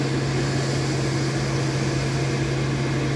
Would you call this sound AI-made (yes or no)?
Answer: no